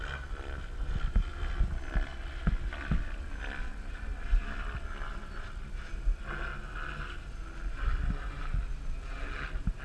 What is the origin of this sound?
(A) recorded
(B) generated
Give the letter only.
A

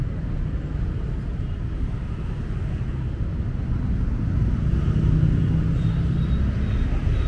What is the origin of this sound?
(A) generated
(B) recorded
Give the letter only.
B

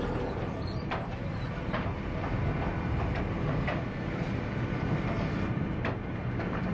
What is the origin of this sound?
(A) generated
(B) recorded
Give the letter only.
A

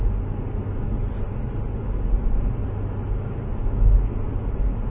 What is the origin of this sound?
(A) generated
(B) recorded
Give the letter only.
B